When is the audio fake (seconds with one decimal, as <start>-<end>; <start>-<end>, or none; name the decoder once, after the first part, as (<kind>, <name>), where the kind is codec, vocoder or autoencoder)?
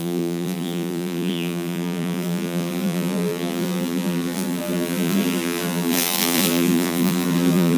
0.0-7.8 (vocoder, BigVGAN v2)